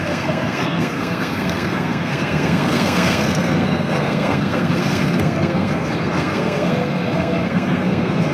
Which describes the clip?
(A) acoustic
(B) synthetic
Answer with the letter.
B